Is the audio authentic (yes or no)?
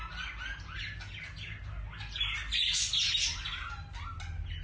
yes